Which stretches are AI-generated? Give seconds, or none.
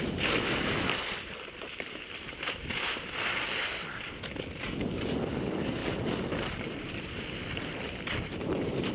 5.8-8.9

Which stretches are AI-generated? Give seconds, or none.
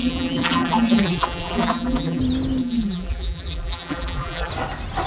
0.0-2.2; 2.6-4.5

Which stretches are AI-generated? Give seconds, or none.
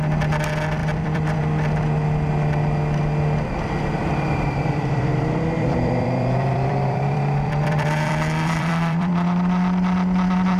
0.8-1.4; 4.0-9.1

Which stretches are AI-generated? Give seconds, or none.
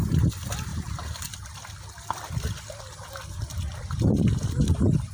none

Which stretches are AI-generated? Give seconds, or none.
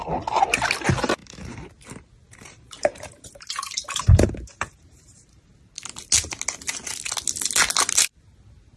1.2-5.6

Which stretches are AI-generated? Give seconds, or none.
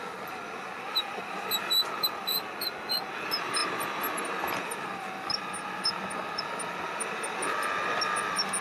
none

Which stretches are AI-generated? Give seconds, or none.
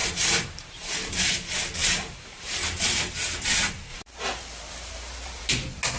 0.0-1.3; 1.8-2.8; 3.9-5.5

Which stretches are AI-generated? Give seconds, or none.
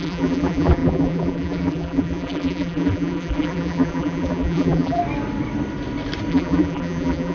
0.0-5.0; 6.3-7.3